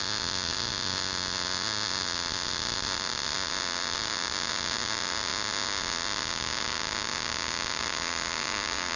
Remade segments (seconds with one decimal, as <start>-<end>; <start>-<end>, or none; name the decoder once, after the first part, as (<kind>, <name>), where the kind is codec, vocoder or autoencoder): none